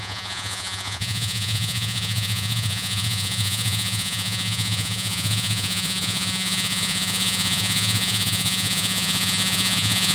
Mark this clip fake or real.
fake